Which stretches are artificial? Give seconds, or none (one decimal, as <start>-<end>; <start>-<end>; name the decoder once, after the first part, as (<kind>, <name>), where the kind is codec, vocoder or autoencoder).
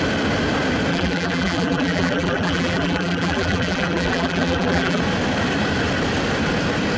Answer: 0.9-5.0 (vocoder, BigVGAN v2)